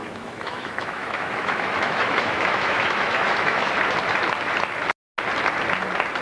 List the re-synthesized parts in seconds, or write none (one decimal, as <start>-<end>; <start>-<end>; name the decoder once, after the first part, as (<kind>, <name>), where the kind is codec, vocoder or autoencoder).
0.0-3.7 (autoencoder, DAC-VAE)